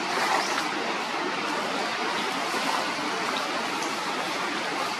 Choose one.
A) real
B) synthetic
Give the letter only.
A